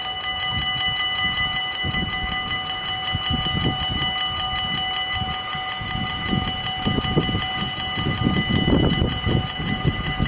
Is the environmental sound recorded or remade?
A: recorded